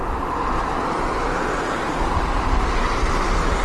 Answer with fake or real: real